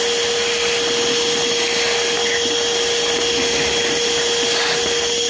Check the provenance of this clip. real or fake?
real